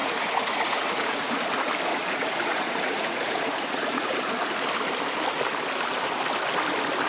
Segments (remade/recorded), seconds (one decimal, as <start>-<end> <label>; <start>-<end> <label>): 0.0-1.3 remade; 1.3-1.9 recorded; 1.9-4.2 remade; 4.2-7.1 recorded